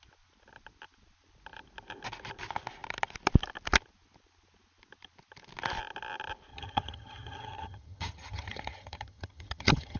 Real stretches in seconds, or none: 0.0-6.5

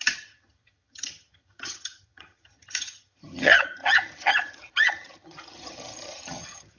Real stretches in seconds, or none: none

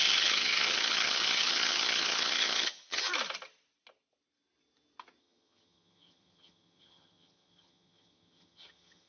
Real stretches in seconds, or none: 3.1-5.2

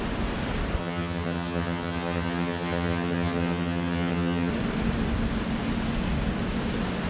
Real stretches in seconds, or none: 0.0-0.8; 4.5-7.1

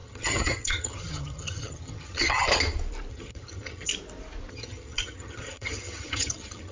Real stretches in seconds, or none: 2.5-3.1; 3.9-4.5

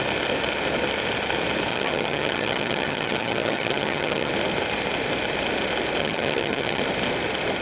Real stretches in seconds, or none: 0.0-1.7; 4.3-6.0; 6.8-7.6

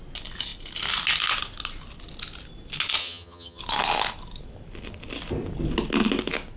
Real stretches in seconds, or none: 0.0-3.0; 3.6-6.6